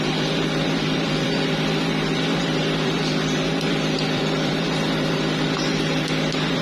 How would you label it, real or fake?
fake